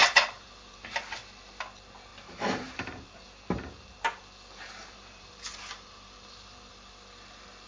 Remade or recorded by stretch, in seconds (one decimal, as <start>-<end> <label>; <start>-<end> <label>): 0.0-1.2 remade; 1.2-2.1 recorded; 2.1-6.7 remade; 6.7-7.7 recorded